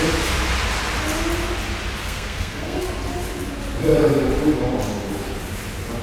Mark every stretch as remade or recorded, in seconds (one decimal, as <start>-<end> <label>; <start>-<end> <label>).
0.0-2.0 recorded; 2.0-2.9 remade; 2.9-6.0 recorded